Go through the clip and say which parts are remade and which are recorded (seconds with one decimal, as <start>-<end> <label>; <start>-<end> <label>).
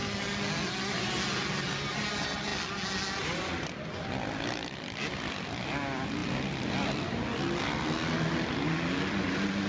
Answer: 0.0-9.7 recorded